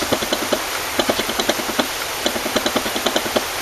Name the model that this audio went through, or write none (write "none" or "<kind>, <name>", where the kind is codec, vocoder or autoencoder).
none